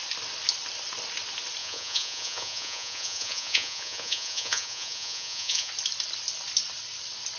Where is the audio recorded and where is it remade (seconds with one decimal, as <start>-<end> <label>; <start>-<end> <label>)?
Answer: 0.0-1.6 recorded; 1.6-5.7 remade; 5.7-7.4 recorded